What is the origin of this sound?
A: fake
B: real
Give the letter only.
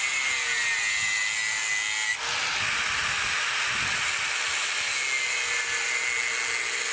B